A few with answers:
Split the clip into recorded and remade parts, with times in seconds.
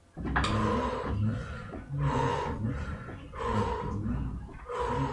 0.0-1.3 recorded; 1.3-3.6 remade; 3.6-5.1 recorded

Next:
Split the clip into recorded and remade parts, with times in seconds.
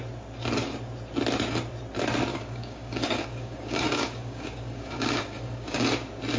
0.0-2.3 recorded; 2.3-5.8 remade; 5.8-6.4 recorded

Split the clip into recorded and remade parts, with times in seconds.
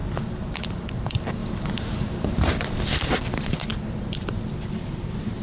0.0-5.4 remade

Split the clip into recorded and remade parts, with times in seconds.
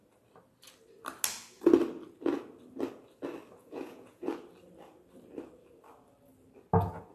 0.0-3.6 recorded; 3.6-4.3 remade; 4.3-7.1 recorded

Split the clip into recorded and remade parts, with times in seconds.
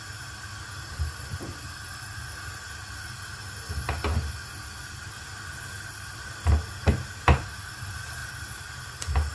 0.0-9.3 recorded